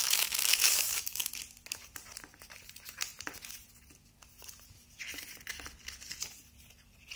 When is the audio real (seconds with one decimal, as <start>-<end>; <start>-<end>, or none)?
1.3-7.2